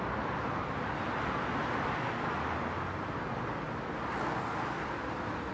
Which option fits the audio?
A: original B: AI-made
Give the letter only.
A